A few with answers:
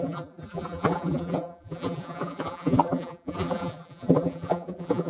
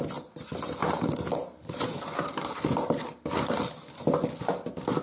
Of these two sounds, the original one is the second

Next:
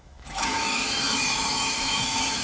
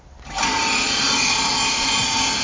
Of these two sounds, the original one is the second